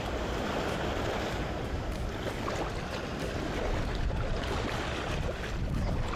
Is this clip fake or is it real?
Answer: real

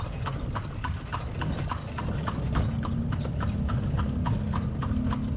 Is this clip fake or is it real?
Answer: real